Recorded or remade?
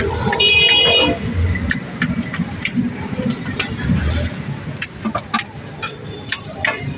recorded